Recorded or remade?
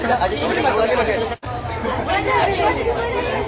recorded